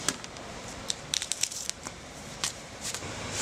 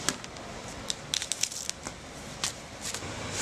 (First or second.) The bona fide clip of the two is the second